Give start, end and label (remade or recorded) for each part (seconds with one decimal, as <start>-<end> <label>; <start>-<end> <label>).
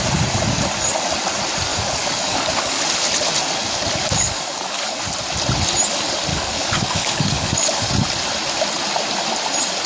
0.0-1.7 recorded; 1.7-2.8 remade; 2.8-4.0 recorded; 4.0-5.1 remade; 5.1-6.3 recorded; 6.3-7.9 remade; 7.9-9.9 recorded